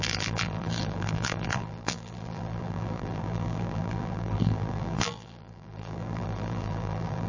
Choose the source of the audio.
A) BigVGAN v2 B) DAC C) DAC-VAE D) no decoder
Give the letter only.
A